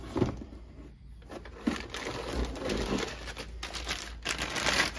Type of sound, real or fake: real